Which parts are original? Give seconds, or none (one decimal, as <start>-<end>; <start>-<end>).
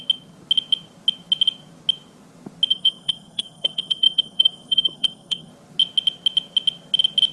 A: 0.0-2.7; 5.5-7.3